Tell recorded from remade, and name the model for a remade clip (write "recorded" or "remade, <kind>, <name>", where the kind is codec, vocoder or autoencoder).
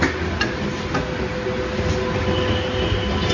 recorded